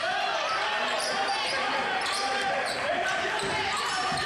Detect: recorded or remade remade